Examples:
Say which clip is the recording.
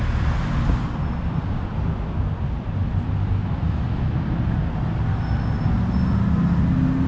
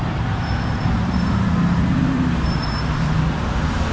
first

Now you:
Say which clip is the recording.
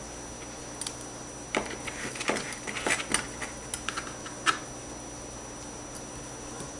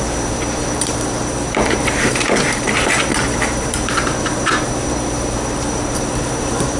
first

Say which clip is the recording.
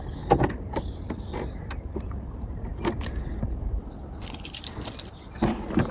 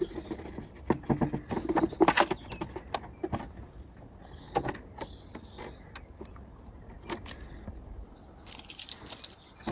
second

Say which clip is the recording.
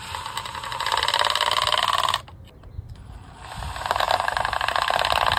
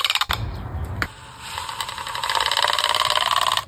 first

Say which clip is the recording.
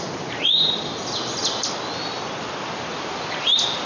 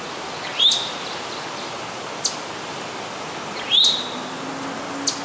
second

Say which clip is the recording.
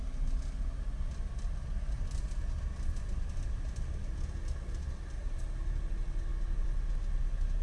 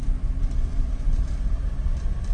first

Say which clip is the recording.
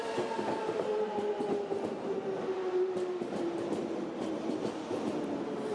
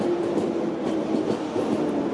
second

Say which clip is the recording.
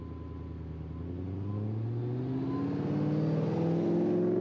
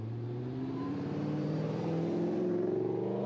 first